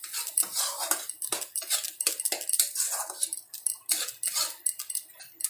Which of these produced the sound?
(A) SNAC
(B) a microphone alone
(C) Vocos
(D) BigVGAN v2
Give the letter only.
B